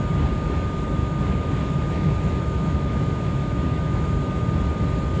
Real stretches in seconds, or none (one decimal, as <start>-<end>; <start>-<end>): 0.0-1.0; 4.1-5.2